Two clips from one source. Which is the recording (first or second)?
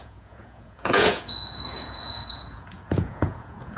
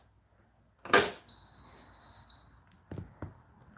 second